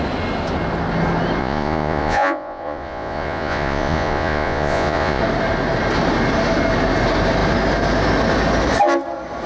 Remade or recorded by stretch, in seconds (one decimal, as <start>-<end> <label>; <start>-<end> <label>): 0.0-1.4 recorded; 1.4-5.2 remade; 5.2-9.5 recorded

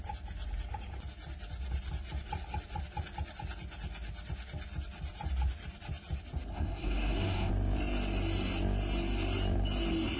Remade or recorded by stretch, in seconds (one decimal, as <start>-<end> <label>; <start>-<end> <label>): 0.0-6.5 recorded; 6.5-7.5 remade; 7.5-10.2 recorded

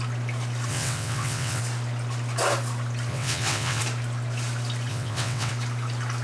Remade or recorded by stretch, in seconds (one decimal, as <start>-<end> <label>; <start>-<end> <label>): 0.0-0.7 recorded; 0.7-1.6 remade; 1.6-3.1 recorded; 3.1-3.8 remade; 3.8-4.9 recorded; 4.9-5.5 remade; 5.5-6.2 recorded

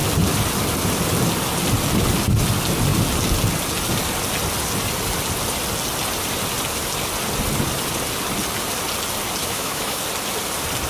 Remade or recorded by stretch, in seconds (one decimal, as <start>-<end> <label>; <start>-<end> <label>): 0.0-9.4 recorded; 9.4-10.0 remade; 10.0-10.9 recorded